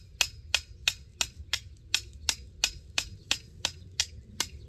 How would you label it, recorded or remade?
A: recorded